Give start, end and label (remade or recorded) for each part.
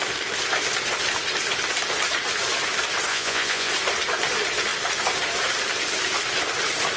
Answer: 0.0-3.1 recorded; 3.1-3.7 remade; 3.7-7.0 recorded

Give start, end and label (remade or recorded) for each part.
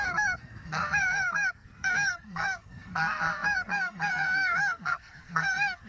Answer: 0.0-5.9 remade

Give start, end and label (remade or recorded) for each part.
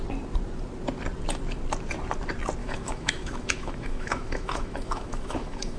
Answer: 0.0-2.6 recorded; 2.6-5.8 remade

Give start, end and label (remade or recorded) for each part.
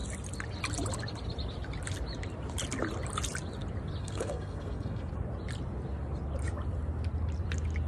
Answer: 0.0-4.0 recorded; 4.0-5.1 remade; 5.1-7.9 recorded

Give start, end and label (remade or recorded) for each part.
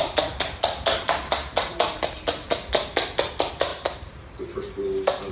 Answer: 0.0-5.3 recorded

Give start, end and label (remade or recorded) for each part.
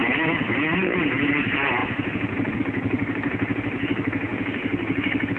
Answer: 0.0-5.4 recorded